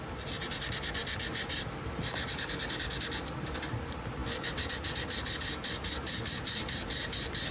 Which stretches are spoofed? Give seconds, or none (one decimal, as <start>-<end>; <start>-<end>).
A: none